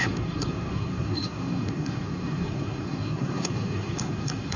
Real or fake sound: fake